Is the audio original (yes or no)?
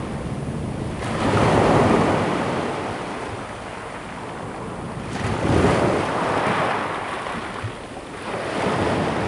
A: yes